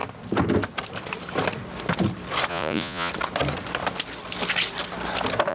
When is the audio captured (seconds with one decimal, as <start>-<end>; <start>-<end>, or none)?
0.0-2.5; 3.1-5.5